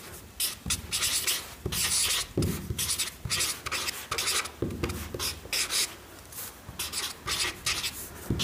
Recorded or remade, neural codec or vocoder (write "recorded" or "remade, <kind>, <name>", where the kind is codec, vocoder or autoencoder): recorded